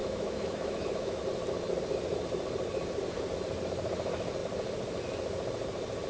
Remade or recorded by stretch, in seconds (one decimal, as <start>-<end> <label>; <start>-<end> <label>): 0.0-1.2 remade; 1.2-6.1 recorded